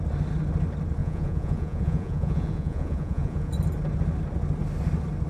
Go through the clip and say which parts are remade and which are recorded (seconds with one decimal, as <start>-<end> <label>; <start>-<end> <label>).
0.0-1.0 recorded; 1.0-3.5 remade; 3.5-5.3 recorded